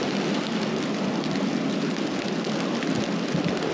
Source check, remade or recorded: recorded